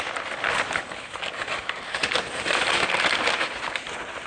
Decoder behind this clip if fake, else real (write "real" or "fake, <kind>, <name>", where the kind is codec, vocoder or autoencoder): real